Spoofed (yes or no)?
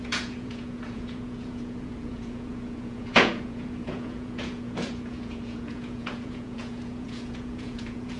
yes